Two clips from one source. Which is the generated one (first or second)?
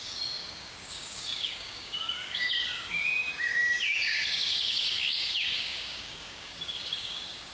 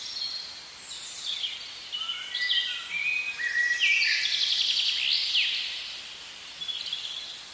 first